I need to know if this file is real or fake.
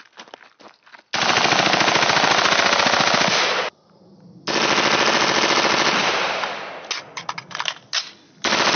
real